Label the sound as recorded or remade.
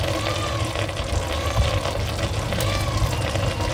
recorded